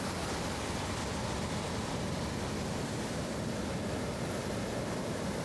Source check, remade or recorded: recorded